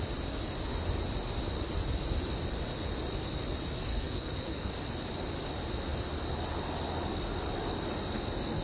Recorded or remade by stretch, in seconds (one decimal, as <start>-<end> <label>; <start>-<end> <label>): 0.0-3.9 recorded; 3.9-4.7 remade; 4.7-8.6 recorded